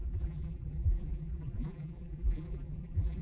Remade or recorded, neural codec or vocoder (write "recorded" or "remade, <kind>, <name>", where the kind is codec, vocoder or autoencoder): remade, vocoder, BigVGAN v2